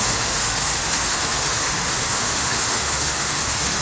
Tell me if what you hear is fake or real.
fake